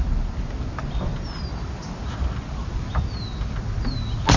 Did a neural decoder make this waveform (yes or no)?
no